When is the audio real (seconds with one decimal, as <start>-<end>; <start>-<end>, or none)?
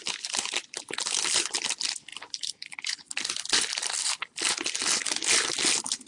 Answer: 0.0-6.1